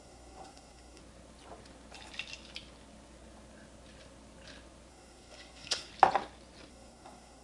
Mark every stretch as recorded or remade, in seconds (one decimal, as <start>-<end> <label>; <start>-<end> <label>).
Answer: 0.0-1.0 remade; 1.0-4.9 recorded; 4.9-5.9 remade; 5.9-6.7 recorded; 6.7-7.4 remade